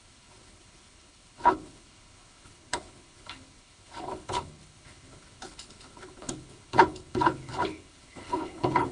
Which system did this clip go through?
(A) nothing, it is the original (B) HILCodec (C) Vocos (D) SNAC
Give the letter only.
B